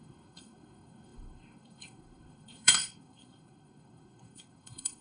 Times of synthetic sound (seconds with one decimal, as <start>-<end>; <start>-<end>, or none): 0.0-5.0